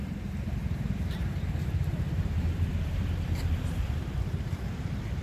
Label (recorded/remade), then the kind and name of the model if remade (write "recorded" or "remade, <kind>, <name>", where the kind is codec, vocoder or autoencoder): remade, vocoder, BigVGAN v2